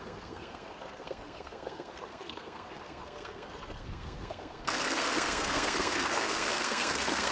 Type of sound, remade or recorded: remade